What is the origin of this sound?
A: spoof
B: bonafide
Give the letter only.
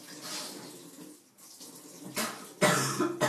B